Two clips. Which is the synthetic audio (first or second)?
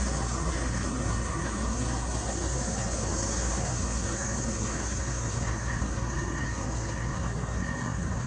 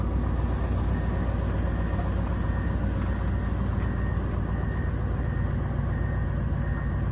first